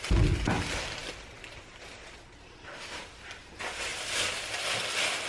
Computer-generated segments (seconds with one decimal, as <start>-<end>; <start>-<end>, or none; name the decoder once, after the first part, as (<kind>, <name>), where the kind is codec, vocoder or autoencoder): 3.9-4.5 (vocoder, BigVGAN v2)